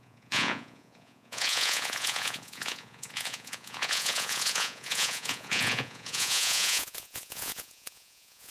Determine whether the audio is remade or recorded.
remade